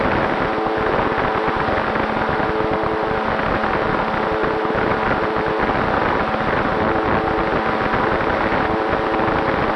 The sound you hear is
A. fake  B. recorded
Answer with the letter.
B